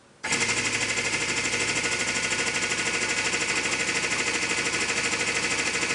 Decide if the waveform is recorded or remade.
recorded